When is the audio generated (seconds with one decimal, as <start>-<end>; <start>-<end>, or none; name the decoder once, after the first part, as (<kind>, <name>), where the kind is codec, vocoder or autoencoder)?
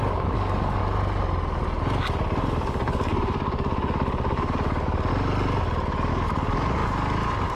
0.0-0.8 (codec, DAC); 2.4-5.1; 6.1-7.6